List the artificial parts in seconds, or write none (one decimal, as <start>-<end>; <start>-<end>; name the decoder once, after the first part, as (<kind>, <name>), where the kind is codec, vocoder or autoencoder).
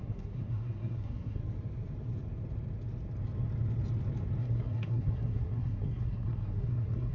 0.0-1.4 (codec, SNAC); 4.4-7.1